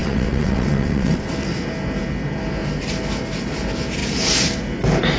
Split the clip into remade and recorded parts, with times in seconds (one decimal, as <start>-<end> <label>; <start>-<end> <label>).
0.0-1.3 remade; 1.3-5.2 recorded